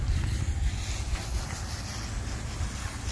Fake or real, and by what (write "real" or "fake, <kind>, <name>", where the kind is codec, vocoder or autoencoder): real